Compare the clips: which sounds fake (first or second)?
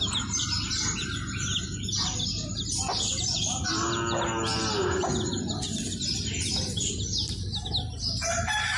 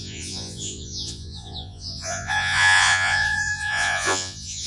second